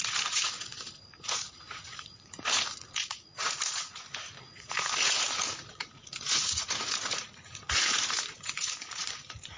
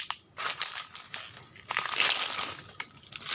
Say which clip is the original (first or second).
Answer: second